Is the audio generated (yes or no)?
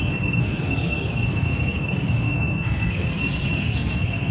yes